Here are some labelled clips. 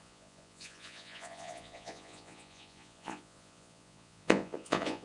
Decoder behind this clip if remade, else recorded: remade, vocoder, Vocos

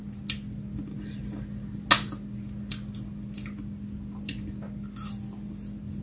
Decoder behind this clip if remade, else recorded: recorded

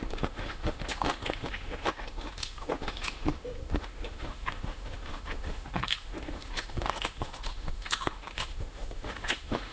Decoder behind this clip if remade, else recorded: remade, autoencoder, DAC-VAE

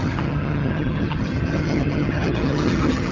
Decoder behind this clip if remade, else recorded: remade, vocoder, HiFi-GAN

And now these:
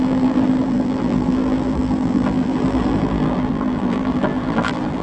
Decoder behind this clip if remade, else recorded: remade, vocoder, BigVGAN v2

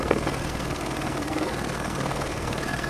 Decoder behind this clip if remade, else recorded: remade, codec, SNAC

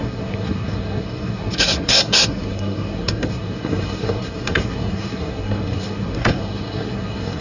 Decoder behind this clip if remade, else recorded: remade, codec, SNAC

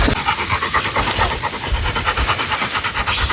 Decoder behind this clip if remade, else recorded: recorded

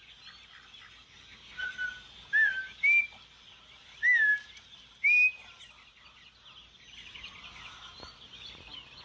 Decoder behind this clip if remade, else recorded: recorded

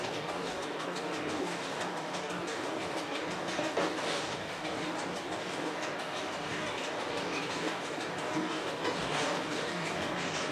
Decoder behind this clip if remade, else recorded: remade, codec, DAC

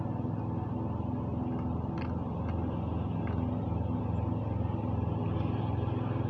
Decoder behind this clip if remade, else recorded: recorded